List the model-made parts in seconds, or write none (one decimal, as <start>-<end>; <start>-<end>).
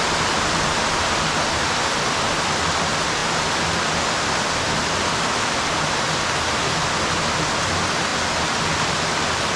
none